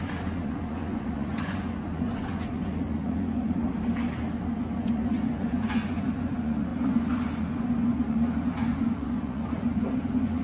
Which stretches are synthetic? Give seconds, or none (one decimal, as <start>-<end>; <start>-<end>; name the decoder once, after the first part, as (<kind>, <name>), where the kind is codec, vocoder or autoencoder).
0.0-3.6 (vocoder, Vocos); 4.8-10.4